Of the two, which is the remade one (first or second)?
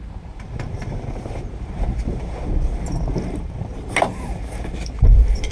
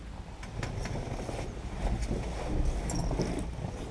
first